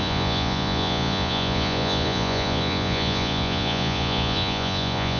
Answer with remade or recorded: remade